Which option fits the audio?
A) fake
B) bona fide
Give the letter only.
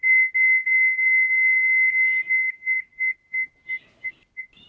B